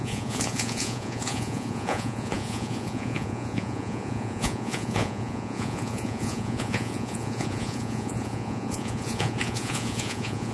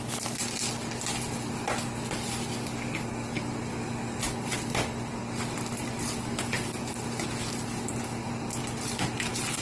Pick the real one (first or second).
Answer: second